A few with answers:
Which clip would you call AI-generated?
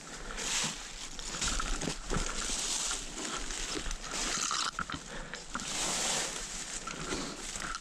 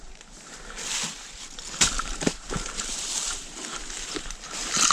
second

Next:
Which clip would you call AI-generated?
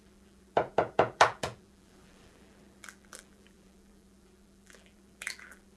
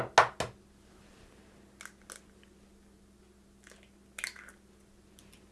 first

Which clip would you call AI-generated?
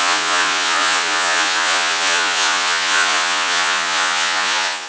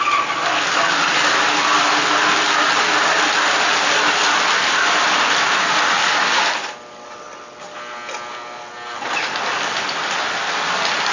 first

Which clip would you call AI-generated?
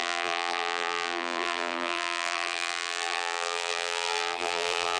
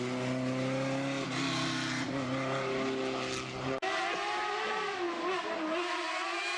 first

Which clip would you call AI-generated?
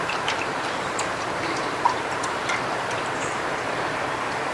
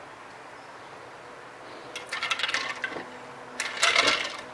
first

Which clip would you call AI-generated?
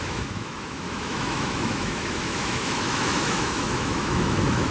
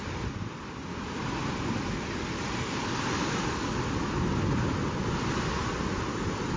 first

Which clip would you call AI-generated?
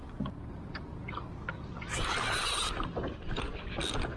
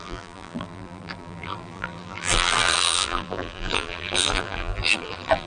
second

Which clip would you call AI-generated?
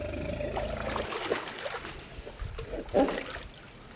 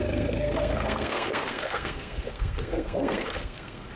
second